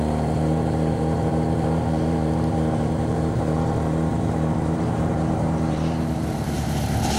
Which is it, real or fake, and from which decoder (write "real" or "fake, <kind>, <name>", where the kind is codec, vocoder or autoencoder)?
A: fake, vocoder, BigVGAN v2